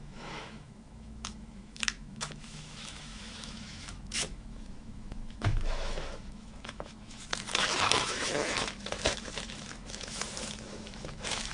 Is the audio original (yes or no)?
no